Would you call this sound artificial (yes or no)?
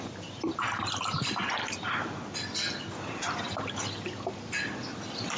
no